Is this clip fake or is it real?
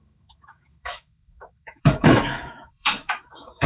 fake